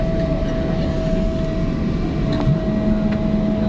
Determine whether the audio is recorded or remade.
recorded